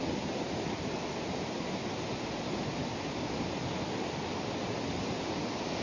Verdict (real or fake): real